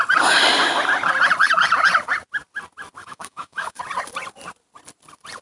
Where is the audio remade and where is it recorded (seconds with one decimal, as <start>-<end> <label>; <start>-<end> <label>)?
0.0-3.0 recorded; 3.0-3.8 remade; 3.8-5.4 recorded